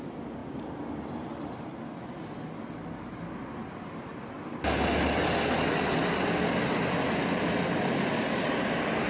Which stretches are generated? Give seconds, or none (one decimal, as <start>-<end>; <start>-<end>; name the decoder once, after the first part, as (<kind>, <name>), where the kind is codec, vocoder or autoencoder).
none